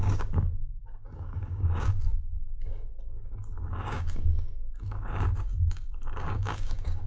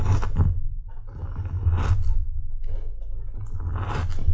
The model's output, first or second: first